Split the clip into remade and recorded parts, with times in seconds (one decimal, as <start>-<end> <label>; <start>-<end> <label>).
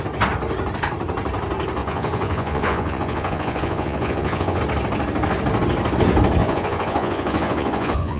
0.0-1.8 recorded; 1.8-4.6 remade; 4.6-6.4 recorded; 6.4-8.2 remade